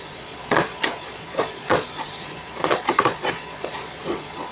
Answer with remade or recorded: remade